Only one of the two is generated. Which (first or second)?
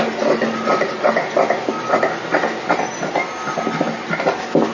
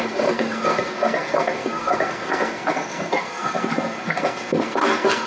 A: second